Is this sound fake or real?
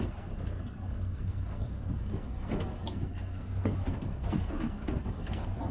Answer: fake